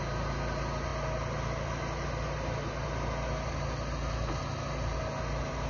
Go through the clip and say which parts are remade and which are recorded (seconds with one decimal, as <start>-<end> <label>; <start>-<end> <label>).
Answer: 0.0-5.7 recorded